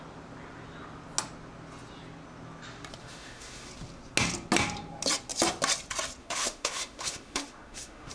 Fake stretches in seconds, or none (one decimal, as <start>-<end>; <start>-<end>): 3.0-3.7; 6.2-8.1